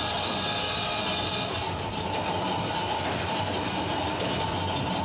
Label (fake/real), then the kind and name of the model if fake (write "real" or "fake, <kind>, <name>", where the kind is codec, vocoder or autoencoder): real